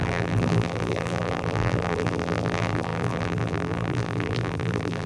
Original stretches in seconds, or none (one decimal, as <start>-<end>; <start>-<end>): none